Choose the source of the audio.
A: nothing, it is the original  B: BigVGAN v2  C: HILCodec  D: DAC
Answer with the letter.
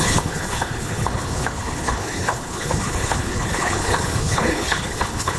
C